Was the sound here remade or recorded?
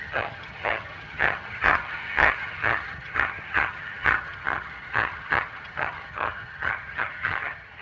remade